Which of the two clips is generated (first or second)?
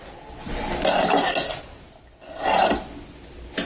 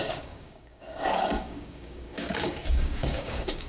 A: second